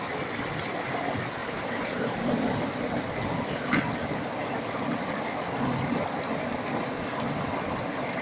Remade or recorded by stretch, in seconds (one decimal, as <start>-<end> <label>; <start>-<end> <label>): 0.0-1.4 recorded; 1.4-2.3 remade; 2.3-8.2 recorded

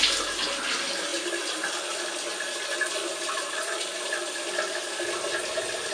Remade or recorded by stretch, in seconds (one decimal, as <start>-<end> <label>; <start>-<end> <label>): 0.0-1.1 remade; 1.1-1.7 recorded; 1.7-2.3 remade; 2.3-2.9 recorded; 2.9-5.9 remade

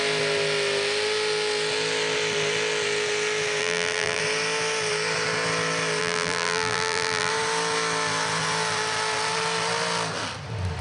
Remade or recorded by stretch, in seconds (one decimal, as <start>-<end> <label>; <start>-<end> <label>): 0.0-3.6 recorded; 3.6-4.2 remade; 4.2-6.0 recorded; 6.0-7.3 remade; 7.3-10.8 recorded

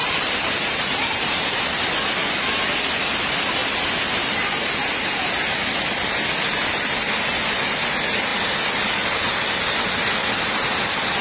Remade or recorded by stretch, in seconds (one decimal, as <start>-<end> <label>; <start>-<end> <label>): 0.0-1.6 remade; 1.6-11.2 recorded

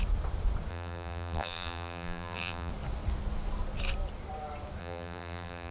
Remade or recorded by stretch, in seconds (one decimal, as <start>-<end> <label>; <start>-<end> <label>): 0.0-0.7 recorded; 0.7-2.7 remade; 2.7-4.8 recorded; 4.8-5.7 remade